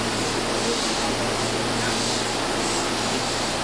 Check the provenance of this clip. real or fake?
real